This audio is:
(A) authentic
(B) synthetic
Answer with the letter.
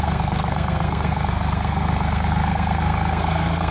B